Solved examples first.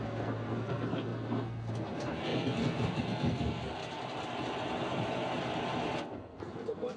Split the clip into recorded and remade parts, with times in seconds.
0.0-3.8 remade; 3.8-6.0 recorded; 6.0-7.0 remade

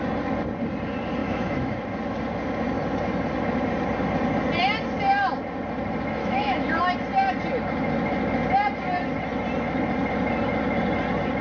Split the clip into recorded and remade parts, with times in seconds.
0.0-1.2 recorded; 1.2-1.8 remade; 1.8-6.2 recorded; 6.2-6.8 remade; 6.8-11.4 recorded

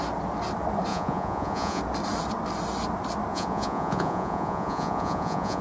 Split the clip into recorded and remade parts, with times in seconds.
0.0-0.9 recorded; 0.9-1.8 remade; 1.8-3.3 recorded; 3.3-5.6 remade

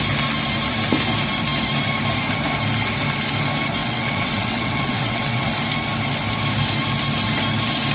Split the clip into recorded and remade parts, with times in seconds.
0.0-3.8 recorded; 3.8-5.5 remade; 5.5-7.9 recorded